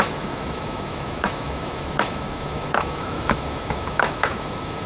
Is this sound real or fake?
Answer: fake